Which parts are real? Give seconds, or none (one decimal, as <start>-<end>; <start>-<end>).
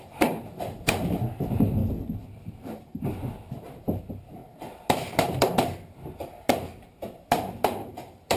1.8-2.3